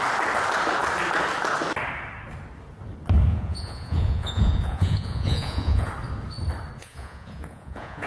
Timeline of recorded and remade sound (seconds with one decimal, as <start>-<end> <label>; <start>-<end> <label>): 0.0-3.3 recorded; 3.3-5.9 remade; 5.9-6.8 recorded; 6.8-8.1 remade